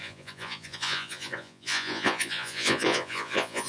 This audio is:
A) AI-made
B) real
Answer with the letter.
A